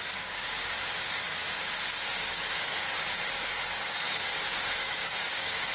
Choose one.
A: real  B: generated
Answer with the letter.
B